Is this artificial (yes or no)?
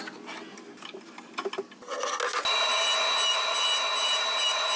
no